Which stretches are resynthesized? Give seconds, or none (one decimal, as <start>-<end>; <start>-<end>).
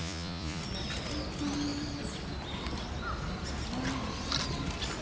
0.0-0.6